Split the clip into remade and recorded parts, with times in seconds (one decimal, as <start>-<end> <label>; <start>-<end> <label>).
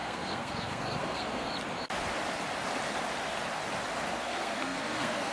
0.0-1.5 remade; 1.5-4.2 recorded; 4.2-5.3 remade